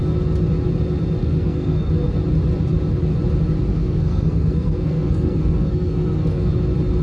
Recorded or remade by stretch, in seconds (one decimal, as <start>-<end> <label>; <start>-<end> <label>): 0.0-1.2 recorded; 1.2-1.9 remade; 1.9-3.7 recorded; 3.7-6.5 remade; 6.5-7.0 recorded